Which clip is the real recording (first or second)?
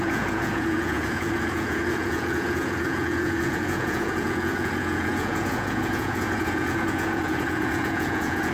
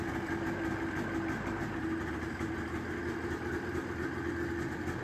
second